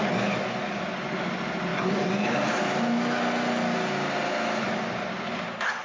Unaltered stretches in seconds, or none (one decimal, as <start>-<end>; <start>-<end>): 0.0-5.8